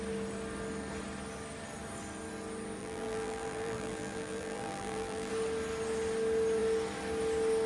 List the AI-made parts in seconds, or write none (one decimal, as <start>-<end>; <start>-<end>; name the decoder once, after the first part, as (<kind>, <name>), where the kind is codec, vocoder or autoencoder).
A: 2.8-5.3 (vocoder, BigVGAN v2)